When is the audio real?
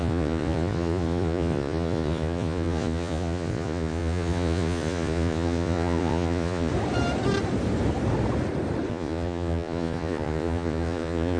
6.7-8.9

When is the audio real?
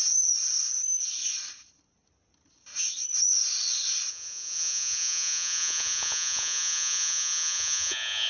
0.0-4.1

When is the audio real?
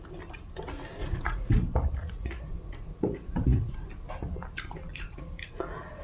0.0-1.0; 1.5-2.0; 3.7-4.9; 5.5-6.0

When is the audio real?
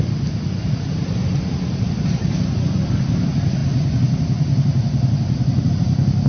0.0-6.3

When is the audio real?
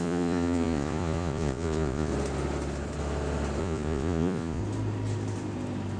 2.1-3.6; 4.6-6.0